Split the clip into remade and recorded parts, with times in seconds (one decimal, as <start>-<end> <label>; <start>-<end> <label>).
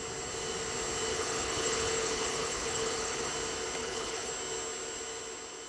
0.0-1.1 recorded; 1.1-3.3 remade; 3.3-3.8 recorded; 3.8-4.3 remade; 4.3-5.7 recorded